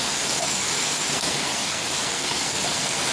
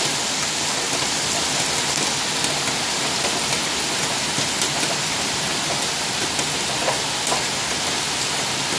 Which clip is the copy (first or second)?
first